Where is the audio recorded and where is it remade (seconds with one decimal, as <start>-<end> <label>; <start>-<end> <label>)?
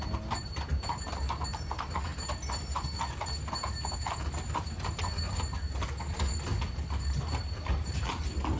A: 0.0-8.6 recorded